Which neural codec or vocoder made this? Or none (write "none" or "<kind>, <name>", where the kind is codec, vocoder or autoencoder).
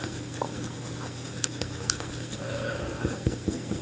codec, SNAC